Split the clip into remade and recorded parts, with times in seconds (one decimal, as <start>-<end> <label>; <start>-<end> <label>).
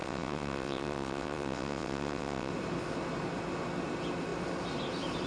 0.0-2.5 remade; 2.5-5.3 recorded